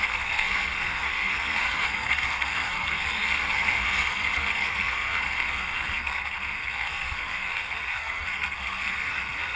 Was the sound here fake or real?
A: fake